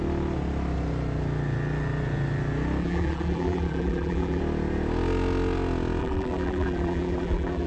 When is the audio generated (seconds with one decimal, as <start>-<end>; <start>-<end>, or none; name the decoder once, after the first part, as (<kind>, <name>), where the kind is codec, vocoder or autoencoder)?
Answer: 2.8-4.4 (vocoder, BigVGAN v2); 6.0-7.7